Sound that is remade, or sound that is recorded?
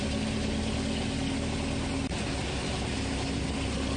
recorded